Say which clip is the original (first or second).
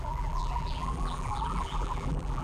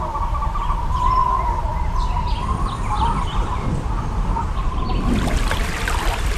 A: second